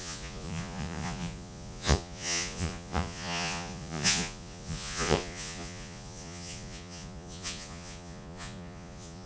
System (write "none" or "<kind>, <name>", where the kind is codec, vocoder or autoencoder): vocoder, Vocos